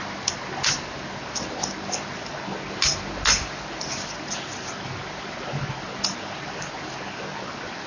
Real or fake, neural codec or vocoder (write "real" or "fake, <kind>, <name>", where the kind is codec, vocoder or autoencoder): real